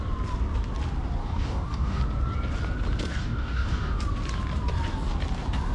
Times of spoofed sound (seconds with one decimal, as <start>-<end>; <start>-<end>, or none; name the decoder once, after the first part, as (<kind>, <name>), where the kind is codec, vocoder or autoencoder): 1.2-2.0 (codec, DAC); 3.1-4.0